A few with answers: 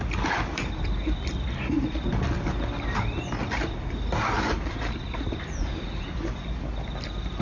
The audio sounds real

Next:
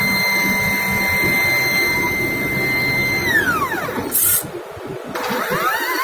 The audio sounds real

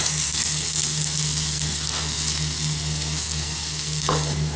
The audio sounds fake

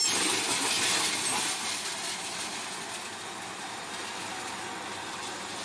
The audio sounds real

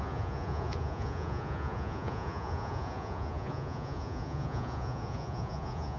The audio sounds fake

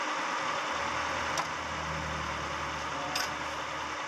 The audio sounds real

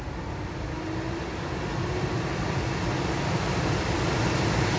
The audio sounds real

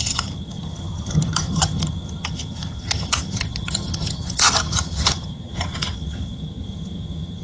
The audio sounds fake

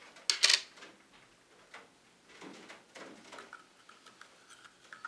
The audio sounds real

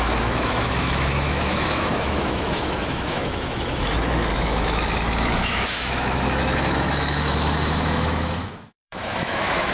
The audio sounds fake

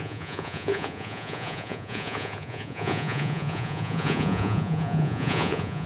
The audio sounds fake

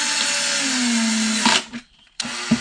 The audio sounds real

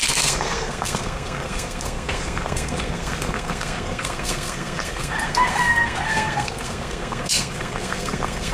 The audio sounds fake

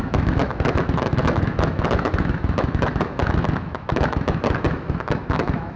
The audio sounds fake